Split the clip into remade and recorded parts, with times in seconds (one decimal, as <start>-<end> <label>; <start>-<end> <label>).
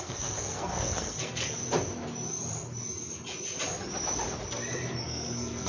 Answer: 0.0-1.6 remade; 1.6-5.0 recorded; 5.0-5.7 remade